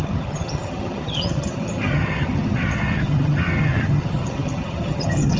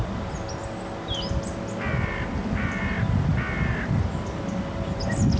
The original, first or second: second